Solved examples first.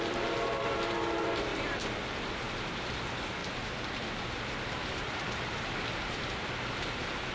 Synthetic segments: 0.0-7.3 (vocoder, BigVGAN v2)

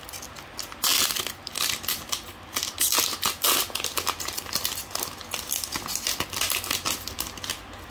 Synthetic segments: none